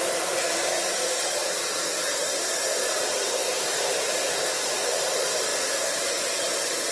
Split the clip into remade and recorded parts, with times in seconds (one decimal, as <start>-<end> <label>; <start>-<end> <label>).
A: 0.0-1.9 remade; 1.9-2.6 recorded; 2.6-3.4 remade; 3.4-4.1 recorded; 4.1-6.9 remade